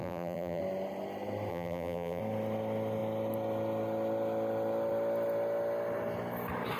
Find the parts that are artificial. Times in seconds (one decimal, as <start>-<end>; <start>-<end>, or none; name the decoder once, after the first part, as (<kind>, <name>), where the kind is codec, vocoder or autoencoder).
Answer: 0.0-0.6 (vocoder, BigVGAN v2); 1.5-2.2